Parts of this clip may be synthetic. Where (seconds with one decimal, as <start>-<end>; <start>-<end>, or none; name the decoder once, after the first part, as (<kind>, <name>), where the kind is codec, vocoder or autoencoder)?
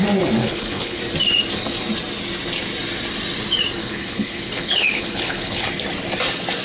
0.4-1.0 (codec, HILCodec); 3.8-5.7